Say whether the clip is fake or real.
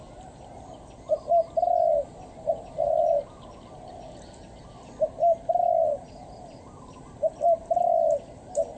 real